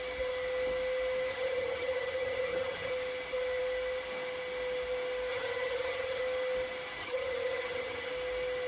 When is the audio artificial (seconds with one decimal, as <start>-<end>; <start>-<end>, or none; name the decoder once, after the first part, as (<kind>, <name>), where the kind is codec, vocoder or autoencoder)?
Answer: 1.3-2.9 (vocoder, HiFi-GAN); 5.3-6.2; 7.0-8.1